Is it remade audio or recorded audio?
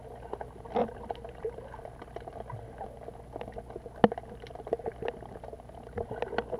recorded